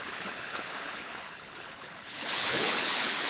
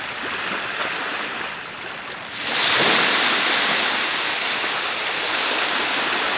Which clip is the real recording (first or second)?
second